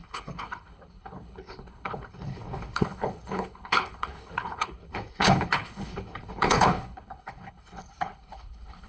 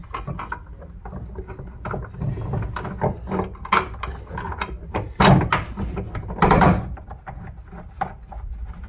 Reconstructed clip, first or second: first